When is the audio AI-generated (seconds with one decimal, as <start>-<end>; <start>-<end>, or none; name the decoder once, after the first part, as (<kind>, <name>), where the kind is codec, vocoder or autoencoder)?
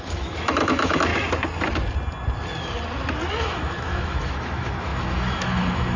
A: 0.0-1.1 (autoencoder, DAC-VAE); 3.4-6.0